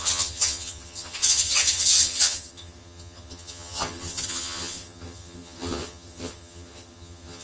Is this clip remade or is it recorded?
remade